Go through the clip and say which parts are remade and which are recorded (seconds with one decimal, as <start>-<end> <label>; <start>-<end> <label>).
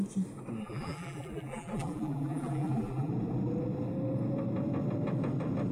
0.0-0.6 recorded; 0.6-3.1 remade; 3.1-5.7 recorded